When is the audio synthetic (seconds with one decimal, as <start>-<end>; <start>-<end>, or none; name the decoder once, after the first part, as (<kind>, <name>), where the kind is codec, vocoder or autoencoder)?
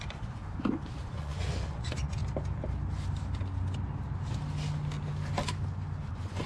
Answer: 0.0-0.4 (vocoder, Vocos); 0.9-2.2; 6.1-6.5